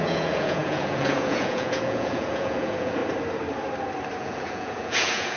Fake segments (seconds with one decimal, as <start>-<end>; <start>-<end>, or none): 0.0-3.0; 4.2-5.4